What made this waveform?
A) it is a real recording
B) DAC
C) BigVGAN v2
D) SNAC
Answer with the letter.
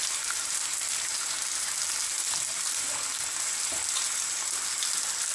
A